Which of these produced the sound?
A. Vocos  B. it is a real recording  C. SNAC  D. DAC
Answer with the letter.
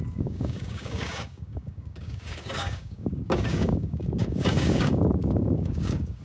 D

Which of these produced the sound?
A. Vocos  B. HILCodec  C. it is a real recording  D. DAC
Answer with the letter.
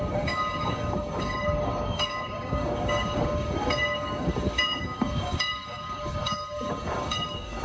D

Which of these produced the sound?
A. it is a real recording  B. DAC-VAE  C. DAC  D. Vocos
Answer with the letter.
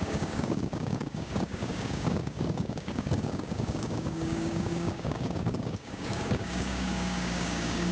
C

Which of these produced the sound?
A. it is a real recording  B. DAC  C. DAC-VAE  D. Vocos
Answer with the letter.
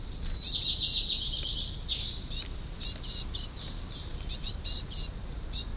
A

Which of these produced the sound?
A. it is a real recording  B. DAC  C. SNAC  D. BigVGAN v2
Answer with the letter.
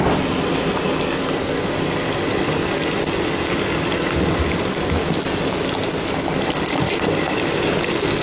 A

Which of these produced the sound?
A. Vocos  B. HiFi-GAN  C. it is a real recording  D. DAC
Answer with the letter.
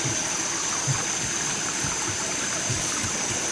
C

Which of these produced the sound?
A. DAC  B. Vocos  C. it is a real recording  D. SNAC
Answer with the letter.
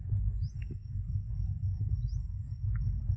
C